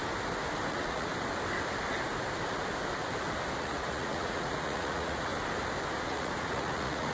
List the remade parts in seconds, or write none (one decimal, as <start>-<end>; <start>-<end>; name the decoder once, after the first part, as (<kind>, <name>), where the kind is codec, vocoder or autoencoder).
0.7-1.1 (vocoder, Vocos); 3.6-5.3; 6.0-7.1